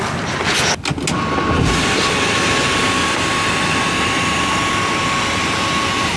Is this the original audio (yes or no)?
yes